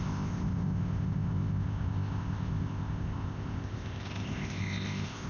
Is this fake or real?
fake